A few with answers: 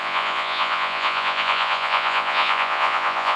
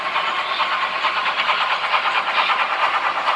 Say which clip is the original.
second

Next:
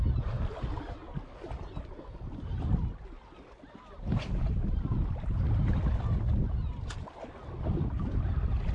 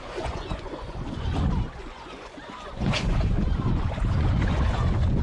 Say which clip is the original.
first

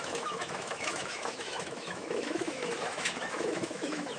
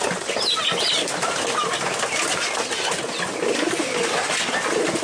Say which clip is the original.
second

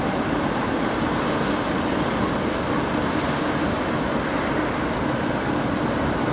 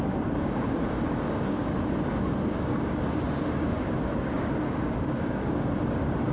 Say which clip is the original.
first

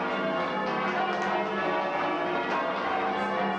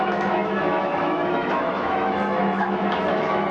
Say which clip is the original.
first